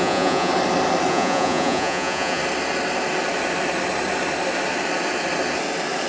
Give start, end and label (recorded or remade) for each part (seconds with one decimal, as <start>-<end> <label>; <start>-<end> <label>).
0.0-0.5 remade; 0.5-1.1 recorded; 1.1-2.4 remade; 2.4-6.1 recorded